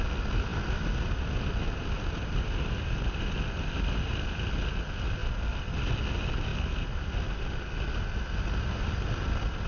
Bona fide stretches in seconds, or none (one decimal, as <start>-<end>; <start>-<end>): 0.0-9.7

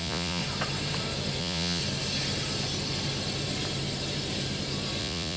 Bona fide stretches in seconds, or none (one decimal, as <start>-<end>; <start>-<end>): 0.4-1.4; 1.8-5.0

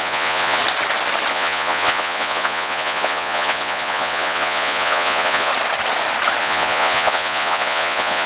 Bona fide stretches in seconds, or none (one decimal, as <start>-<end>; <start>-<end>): 0.6-1.3; 5.5-6.4

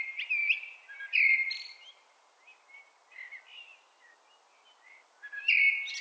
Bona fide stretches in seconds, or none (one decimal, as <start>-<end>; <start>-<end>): 0.0-6.0

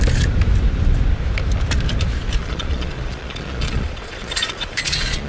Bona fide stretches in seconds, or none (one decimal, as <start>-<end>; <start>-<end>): 0.0-2.4

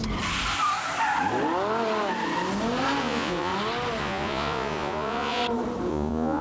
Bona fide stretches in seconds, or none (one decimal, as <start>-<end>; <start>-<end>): 0.0-3.0; 3.5-4.0; 5.4-5.9

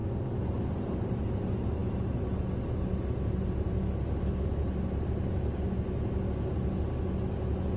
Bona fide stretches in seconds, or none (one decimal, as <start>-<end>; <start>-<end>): 0.0-7.8